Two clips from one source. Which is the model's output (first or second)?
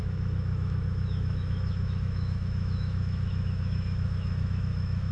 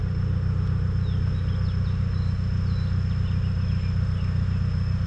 first